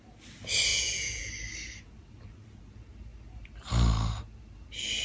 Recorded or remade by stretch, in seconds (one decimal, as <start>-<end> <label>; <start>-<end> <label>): 0.0-0.7 recorded; 0.7-1.3 remade; 1.3-5.0 recorded